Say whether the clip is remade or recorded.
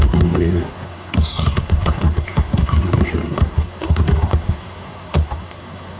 remade